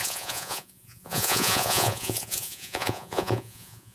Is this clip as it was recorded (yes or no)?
no